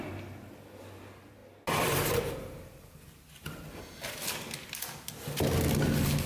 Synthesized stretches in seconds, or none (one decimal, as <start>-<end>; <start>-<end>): none